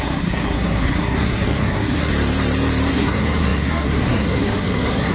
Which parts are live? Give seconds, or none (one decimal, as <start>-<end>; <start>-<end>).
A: 2.1-2.9